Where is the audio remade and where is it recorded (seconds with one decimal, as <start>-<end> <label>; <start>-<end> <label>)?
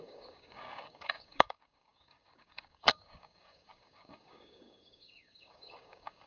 0.0-6.3 remade